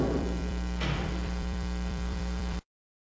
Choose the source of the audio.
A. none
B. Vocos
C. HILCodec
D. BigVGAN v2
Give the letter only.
D